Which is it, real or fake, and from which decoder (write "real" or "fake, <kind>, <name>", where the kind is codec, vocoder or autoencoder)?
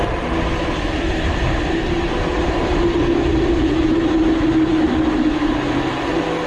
real